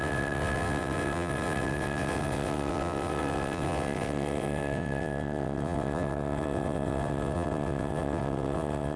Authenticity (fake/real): fake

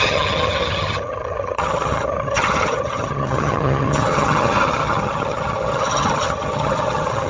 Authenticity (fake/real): fake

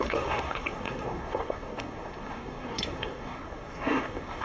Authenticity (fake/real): fake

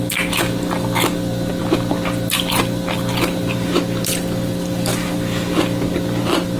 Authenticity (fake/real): real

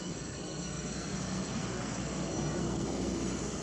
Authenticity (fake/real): fake